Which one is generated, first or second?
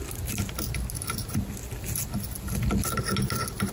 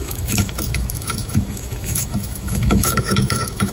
second